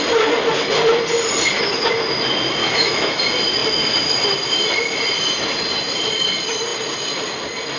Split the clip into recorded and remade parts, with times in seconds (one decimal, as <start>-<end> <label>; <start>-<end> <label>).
0.0-2.6 recorded; 2.6-3.2 remade; 3.2-7.8 recorded